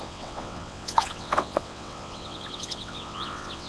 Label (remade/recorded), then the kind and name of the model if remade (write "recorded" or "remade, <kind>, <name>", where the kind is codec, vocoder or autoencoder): remade, vocoder, WaveNeXt